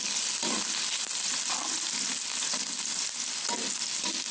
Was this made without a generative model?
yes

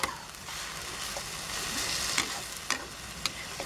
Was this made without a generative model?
yes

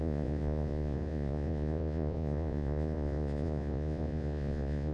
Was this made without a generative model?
no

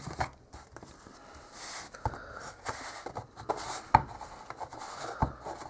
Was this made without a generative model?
yes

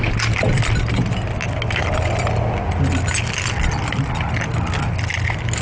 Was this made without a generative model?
yes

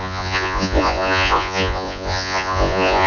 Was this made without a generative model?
no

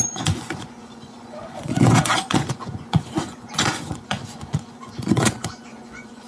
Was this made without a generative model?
no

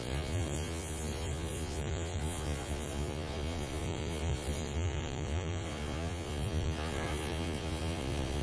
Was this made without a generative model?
no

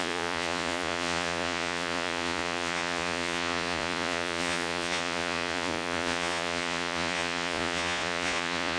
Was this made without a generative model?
no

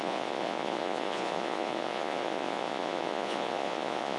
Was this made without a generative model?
no